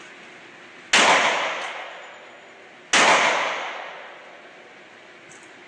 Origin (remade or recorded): recorded